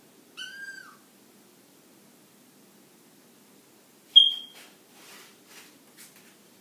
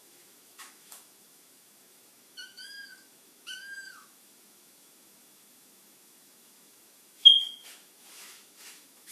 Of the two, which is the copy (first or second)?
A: second